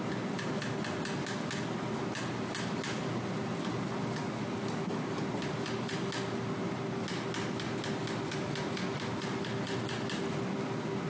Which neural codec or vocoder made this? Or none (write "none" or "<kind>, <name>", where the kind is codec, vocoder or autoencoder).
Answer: none